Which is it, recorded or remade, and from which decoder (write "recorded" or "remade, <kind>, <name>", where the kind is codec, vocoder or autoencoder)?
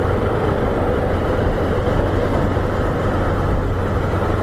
recorded